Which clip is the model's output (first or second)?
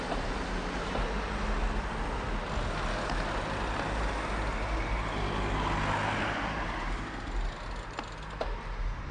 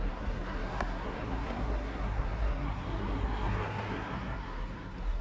second